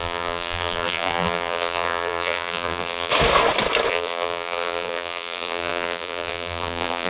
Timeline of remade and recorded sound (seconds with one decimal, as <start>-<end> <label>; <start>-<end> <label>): 0.0-3.1 remade; 3.1-3.9 recorded; 3.9-7.1 remade